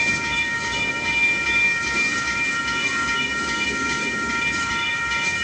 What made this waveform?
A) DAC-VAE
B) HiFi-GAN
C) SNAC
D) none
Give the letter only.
A